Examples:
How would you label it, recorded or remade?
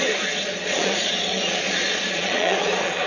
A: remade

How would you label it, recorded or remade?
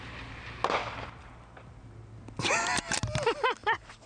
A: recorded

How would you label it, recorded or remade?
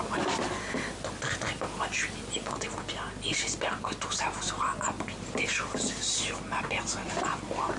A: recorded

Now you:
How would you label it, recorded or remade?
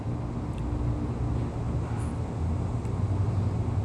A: recorded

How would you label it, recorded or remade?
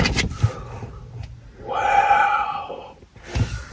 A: recorded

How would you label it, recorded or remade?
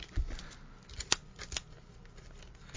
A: recorded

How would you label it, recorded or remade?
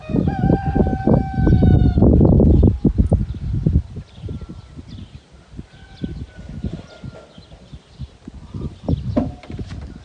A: recorded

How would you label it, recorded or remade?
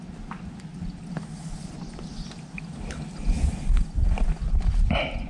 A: recorded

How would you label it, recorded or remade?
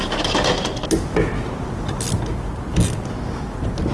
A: recorded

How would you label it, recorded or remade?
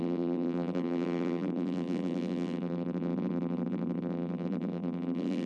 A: remade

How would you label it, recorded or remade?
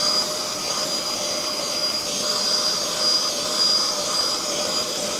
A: recorded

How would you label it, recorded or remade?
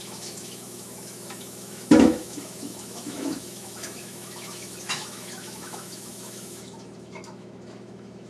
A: remade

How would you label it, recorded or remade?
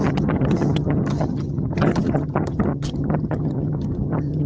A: remade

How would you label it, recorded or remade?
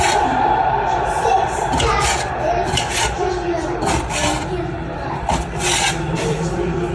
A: remade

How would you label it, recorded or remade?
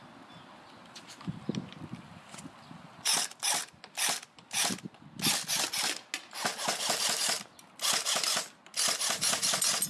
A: recorded